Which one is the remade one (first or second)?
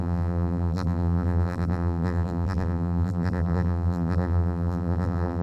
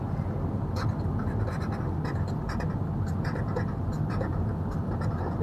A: first